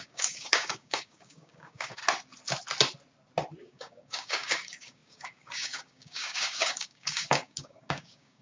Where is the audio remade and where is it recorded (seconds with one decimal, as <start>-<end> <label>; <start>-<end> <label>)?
0.0-2.0 remade; 2.0-3.6 recorded; 3.6-8.4 remade